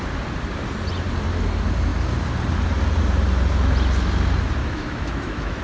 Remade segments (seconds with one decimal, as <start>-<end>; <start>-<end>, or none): 4.6-5.6